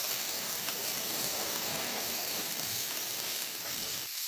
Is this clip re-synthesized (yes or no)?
yes